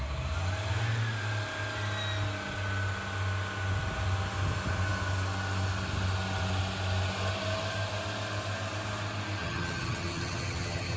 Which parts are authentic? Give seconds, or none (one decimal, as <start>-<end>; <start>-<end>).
0.0-9.4